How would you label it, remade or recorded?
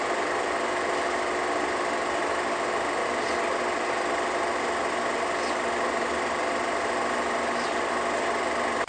recorded